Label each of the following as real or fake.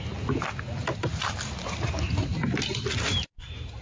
real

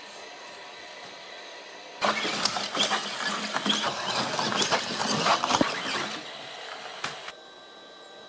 real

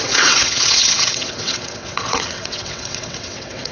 fake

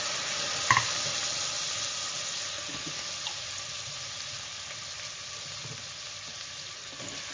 real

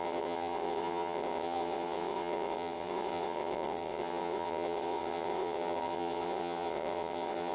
fake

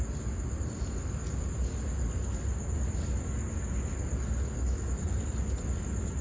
real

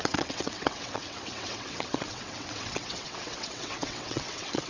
fake